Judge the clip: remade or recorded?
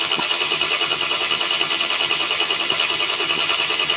remade